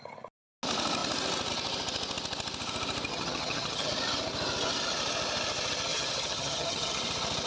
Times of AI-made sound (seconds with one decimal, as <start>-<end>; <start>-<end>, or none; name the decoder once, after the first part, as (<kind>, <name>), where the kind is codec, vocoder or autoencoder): 3.1-3.9 (vocoder, HiFi-GAN); 5.9-7.0